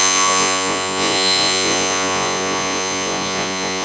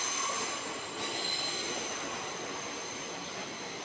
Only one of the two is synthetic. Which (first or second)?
first